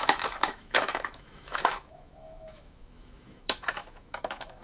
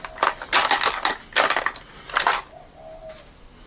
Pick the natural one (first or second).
second